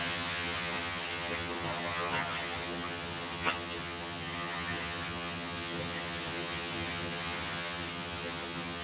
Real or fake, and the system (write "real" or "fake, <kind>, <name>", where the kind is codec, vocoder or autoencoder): fake, vocoder, HiFi-GAN